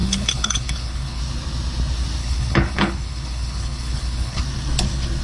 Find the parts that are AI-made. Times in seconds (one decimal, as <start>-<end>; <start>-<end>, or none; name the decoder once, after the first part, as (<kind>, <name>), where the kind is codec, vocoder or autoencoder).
0.0-1.2 (codec, HILCodec); 2.2-4.4